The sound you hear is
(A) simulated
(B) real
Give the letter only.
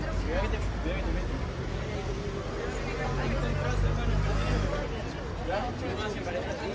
B